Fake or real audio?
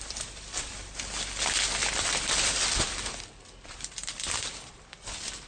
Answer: real